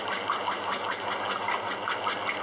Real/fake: real